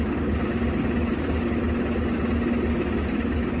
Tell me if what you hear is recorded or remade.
recorded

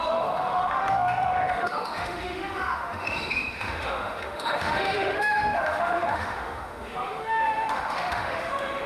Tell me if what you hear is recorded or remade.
remade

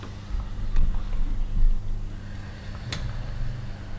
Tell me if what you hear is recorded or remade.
recorded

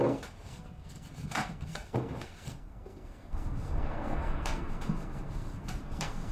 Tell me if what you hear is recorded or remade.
remade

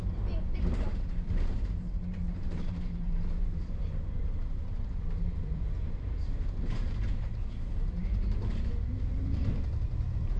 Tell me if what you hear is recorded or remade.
remade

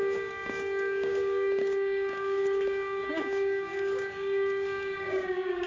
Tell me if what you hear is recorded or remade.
remade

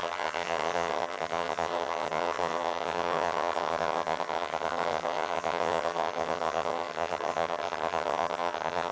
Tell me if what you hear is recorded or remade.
remade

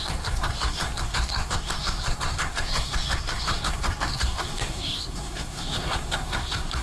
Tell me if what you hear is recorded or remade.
remade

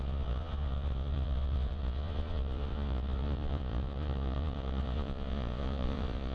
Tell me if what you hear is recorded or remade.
remade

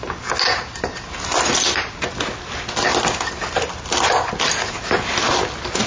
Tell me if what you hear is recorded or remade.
recorded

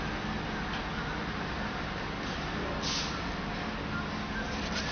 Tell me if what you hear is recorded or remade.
recorded